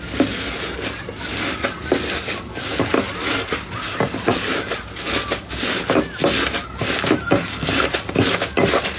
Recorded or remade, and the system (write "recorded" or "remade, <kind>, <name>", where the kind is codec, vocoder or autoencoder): recorded